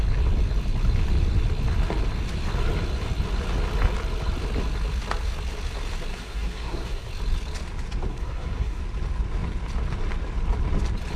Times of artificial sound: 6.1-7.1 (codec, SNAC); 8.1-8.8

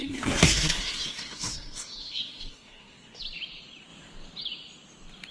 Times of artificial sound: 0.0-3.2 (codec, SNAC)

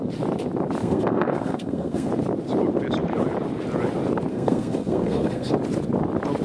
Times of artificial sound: 0.8-2.1 (codec, SNAC); 4.3-5.5

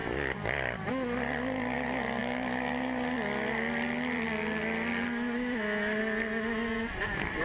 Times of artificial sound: none